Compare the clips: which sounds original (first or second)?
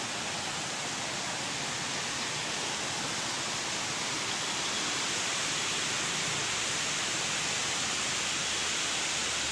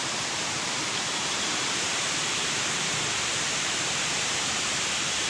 first